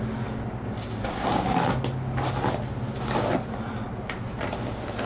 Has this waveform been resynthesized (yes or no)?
no